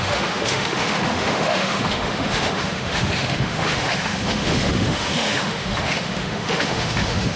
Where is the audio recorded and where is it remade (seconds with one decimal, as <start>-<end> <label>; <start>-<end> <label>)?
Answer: 0.0-7.4 remade